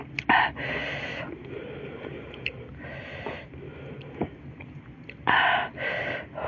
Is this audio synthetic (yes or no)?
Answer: no